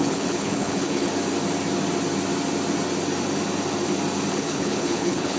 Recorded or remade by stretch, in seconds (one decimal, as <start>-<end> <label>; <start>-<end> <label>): 0.0-1.1 remade; 1.1-4.3 recorded; 4.3-5.4 remade